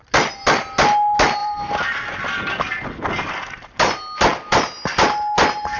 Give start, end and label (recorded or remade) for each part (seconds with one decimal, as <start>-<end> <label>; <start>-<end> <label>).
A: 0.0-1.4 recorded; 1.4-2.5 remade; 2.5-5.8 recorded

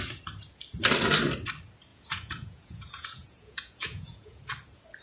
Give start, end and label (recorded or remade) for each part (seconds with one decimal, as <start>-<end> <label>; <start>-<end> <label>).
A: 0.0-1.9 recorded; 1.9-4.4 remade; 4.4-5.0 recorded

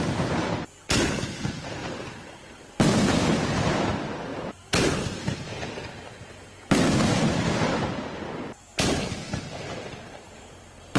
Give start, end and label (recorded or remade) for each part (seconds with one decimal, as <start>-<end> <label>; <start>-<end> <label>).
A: 0.0-1.8 recorded; 1.8-2.3 remade; 2.3-4.3 recorded; 4.3-5.5 remade; 5.5-11.0 recorded

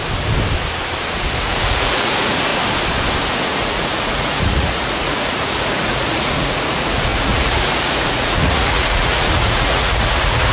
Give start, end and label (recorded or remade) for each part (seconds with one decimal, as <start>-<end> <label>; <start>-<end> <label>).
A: 0.0-1.4 recorded; 1.4-2.5 remade; 2.5-3.5 recorded; 3.5-10.5 remade

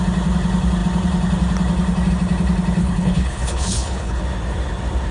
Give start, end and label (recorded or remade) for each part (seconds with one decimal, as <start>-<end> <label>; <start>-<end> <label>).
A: 0.0-2.8 recorded; 2.8-4.2 remade; 4.2-5.1 recorded

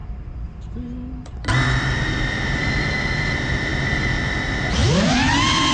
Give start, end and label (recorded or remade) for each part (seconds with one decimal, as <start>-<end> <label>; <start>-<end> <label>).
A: 0.0-5.7 recorded

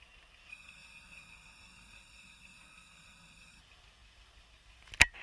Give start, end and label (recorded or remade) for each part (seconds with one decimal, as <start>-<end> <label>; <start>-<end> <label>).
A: 0.0-0.5 recorded; 0.5-3.6 remade; 3.6-5.2 recorded